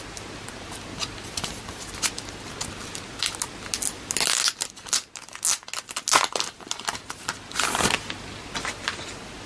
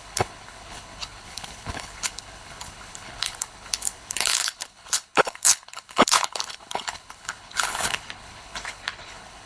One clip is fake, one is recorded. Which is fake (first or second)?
second